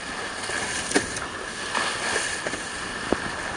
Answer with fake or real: real